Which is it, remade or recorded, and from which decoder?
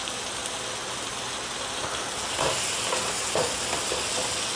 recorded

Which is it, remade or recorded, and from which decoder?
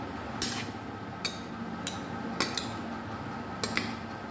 recorded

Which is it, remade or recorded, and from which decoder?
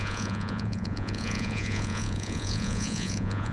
remade, vocoder, Vocos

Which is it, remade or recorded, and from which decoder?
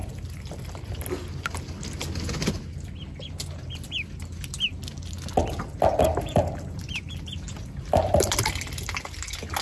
recorded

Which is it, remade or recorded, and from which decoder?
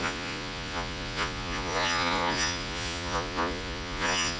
remade, vocoder, Vocos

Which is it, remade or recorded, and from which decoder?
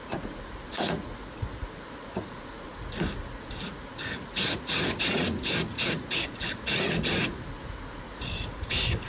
remade, vocoder, Vocos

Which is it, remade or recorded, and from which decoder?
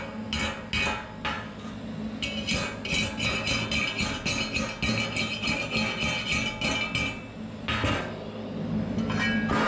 recorded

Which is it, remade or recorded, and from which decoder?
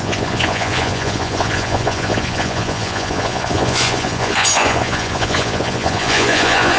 remade, vocoder, Vocos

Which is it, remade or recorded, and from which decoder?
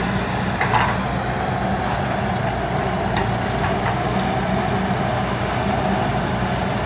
recorded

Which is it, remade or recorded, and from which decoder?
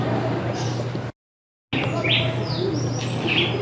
recorded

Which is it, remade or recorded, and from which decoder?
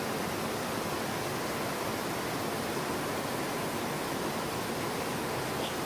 recorded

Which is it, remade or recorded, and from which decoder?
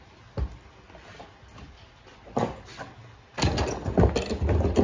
recorded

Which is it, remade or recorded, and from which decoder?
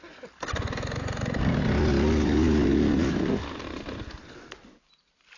recorded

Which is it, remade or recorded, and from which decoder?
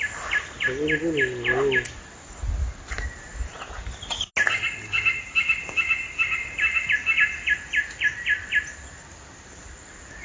recorded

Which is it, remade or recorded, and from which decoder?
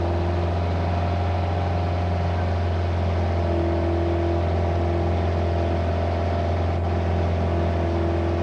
recorded